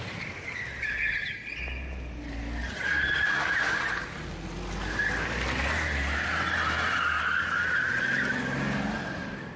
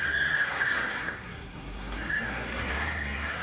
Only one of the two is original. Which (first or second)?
first